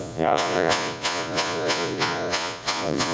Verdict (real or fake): fake